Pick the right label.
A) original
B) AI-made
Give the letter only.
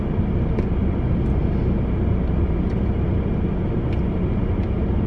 A